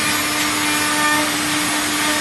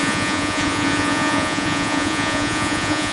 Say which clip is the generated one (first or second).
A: second